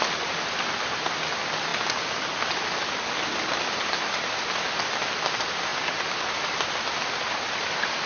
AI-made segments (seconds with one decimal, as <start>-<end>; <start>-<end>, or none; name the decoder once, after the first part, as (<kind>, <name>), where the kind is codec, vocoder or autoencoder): none